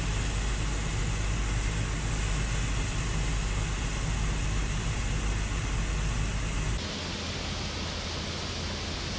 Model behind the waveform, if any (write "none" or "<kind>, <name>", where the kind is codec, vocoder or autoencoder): none